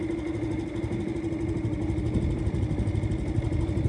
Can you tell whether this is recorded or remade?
recorded